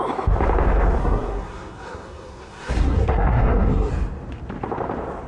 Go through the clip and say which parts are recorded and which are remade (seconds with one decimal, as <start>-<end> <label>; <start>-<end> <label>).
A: 0.0-1.0 recorded; 1.0-3.9 remade; 3.9-5.3 recorded